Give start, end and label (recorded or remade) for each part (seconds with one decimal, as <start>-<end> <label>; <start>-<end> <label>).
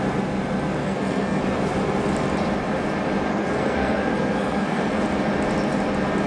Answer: 0.0-0.8 recorded; 0.8-1.4 remade; 1.4-3.3 recorded; 3.3-5.0 remade; 5.0-6.3 recorded